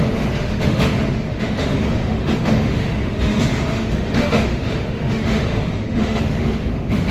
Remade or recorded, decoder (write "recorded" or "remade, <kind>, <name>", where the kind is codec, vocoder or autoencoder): remade, autoencoder, DAC-VAE